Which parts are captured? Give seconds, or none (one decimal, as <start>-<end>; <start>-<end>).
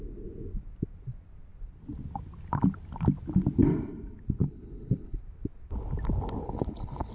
0.0-4.4; 5.2-6.4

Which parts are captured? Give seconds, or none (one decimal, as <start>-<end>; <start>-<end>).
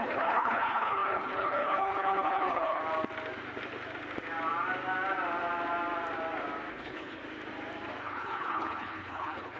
2.8-6.7; 7.2-8.0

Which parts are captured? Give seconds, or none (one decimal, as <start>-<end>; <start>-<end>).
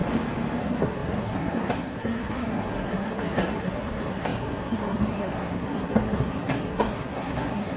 0.0-0.6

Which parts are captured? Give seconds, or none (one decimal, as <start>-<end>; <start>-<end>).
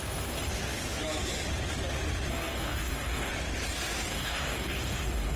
0.5-2.3; 3.3-4.1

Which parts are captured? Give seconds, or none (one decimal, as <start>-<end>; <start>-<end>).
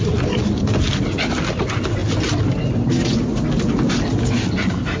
0.0-5.0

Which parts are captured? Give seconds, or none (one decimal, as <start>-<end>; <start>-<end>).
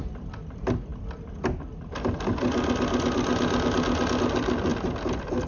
0.0-5.5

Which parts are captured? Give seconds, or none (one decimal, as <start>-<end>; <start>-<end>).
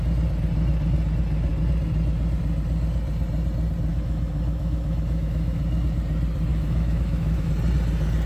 0.0-3.9; 5.6-6.5; 7.5-8.3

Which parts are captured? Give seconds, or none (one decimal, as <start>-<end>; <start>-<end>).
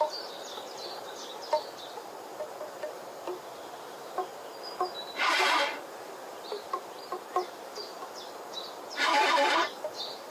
1.3-3.5; 4.3-5.4; 7.9-9.3